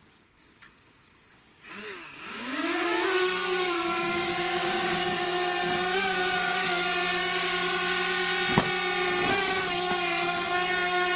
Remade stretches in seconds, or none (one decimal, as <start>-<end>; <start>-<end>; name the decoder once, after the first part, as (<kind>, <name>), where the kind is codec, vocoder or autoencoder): 0.0-8.3 (codec, DAC); 9.3-11.2